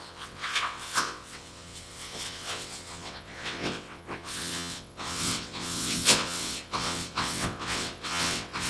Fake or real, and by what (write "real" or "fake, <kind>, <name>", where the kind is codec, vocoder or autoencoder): fake, vocoder, WaveNeXt